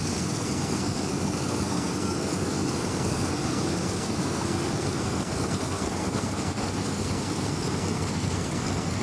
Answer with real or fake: fake